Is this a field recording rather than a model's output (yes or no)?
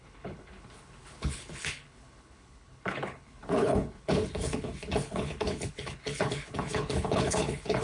no